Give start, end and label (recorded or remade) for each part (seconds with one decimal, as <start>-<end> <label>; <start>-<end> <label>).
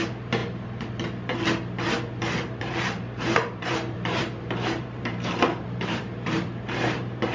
0.0-0.4 remade; 0.4-2.6 recorded; 2.6-7.3 remade